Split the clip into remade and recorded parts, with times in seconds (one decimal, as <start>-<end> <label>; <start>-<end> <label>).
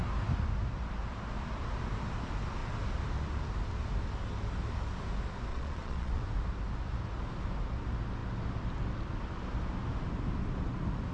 0.0-5.5 recorded; 5.5-6.2 remade; 6.2-11.1 recorded